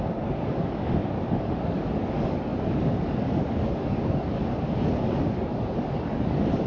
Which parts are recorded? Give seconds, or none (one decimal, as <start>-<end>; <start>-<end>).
4.4-5.0